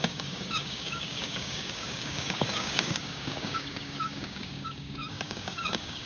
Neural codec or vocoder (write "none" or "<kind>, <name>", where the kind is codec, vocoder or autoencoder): codec, DAC